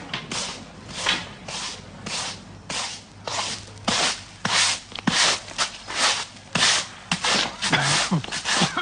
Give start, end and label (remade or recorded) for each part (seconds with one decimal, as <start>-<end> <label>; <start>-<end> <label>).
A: 0.0-8.8 recorded